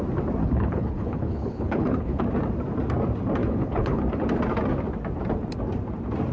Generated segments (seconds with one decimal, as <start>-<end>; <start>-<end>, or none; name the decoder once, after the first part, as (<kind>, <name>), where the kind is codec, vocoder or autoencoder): 0.4-2.2 (codec, HILCodec); 3.4-4.0